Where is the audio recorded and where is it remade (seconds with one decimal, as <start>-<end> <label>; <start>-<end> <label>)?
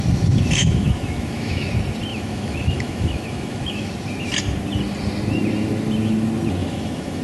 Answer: 0.0-0.6 recorded; 0.6-1.7 remade; 1.7-2.1 recorded; 2.1-3.9 remade; 3.9-6.6 recorded; 6.6-7.2 remade